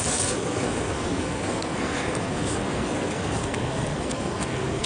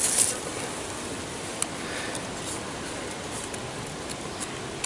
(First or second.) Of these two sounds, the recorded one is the second